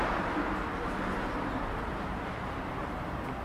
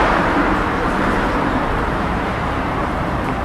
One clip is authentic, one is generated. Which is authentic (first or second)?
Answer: first